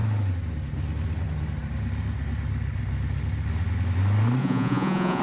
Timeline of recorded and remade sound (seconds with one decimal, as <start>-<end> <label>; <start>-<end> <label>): 0.0-4.4 recorded; 4.4-5.2 remade

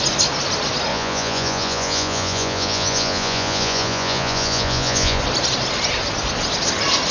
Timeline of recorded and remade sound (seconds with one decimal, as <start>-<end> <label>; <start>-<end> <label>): 0.0-0.9 recorded; 0.9-5.2 remade; 5.2-7.1 recorded

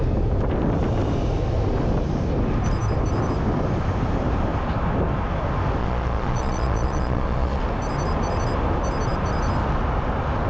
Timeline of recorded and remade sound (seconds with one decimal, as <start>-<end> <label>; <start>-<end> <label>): 0.0-5.8 recorded; 5.8-7.6 remade; 7.6-10.5 recorded

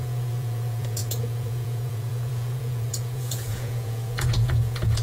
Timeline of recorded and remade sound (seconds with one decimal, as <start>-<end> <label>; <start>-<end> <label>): 0.0-5.0 remade

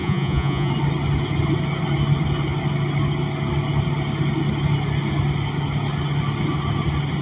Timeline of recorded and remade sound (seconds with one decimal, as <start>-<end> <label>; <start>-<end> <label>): 0.0-0.7 remade; 0.7-7.2 recorded

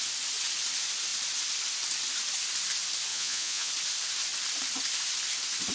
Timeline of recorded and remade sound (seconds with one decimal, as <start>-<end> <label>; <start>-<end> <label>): 0.0-3.1 recorded; 3.1-3.7 remade; 3.7-5.7 recorded

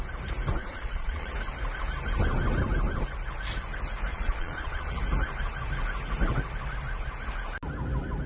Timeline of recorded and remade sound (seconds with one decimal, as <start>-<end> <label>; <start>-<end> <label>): 0.0-0.6 recorded; 0.6-1.3 remade; 1.3-4.1 recorded; 4.1-5.0 remade; 5.0-8.3 recorded

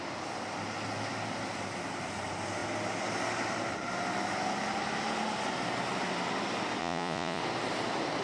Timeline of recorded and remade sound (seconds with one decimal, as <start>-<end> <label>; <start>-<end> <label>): 0.0-6.8 recorded; 6.8-7.4 remade; 7.4-8.2 recorded